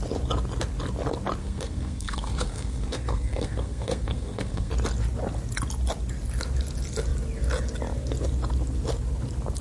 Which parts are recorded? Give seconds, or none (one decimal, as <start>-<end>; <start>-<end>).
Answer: 0.0-1.4; 4.7-9.6